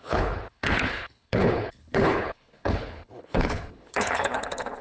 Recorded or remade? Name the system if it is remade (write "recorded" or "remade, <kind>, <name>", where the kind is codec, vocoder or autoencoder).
remade, codec, HILCodec